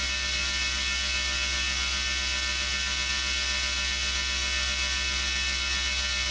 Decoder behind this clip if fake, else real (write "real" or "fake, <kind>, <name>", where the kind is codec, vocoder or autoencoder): real